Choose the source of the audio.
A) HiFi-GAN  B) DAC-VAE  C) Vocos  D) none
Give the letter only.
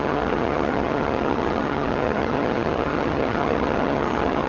A